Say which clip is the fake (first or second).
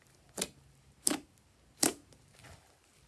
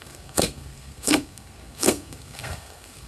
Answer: second